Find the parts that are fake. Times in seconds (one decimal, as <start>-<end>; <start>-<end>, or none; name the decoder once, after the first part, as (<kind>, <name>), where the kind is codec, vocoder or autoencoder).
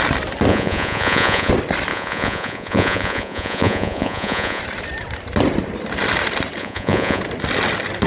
0.5-1.5 (vocoder, Vocos); 1.9-4.6; 6.6-7.2